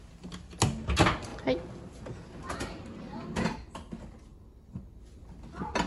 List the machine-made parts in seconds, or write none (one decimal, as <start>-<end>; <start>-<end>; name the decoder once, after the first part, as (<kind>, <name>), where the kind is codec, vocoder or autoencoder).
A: none